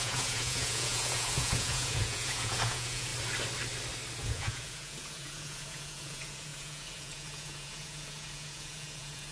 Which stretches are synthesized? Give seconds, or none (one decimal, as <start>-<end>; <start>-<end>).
0.0-3.1; 4.2-9.3